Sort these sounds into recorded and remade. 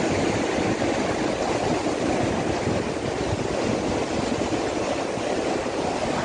recorded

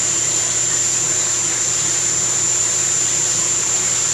remade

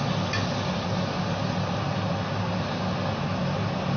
recorded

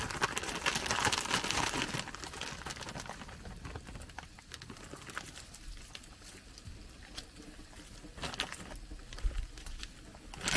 recorded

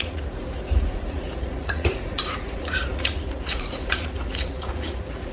remade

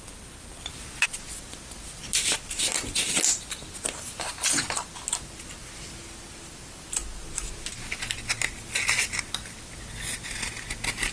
recorded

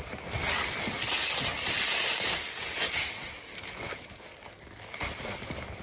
recorded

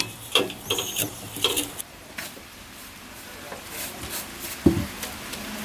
remade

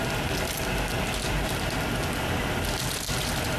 recorded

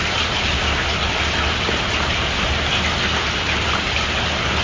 recorded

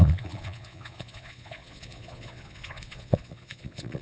remade